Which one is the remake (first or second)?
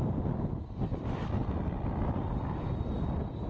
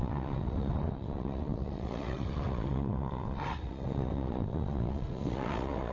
second